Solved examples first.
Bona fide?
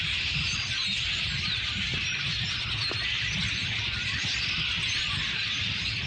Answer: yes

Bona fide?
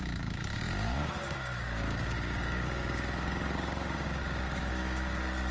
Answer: no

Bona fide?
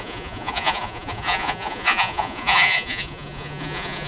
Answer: no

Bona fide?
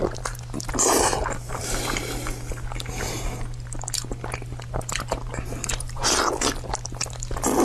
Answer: yes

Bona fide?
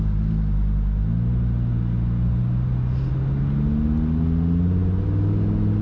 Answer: yes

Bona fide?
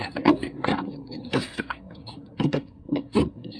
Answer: no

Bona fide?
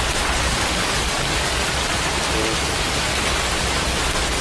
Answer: yes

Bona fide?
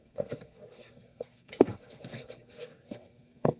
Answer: no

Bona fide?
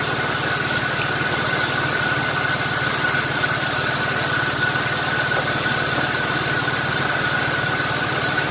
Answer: yes